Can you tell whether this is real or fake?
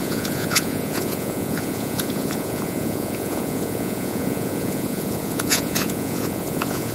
fake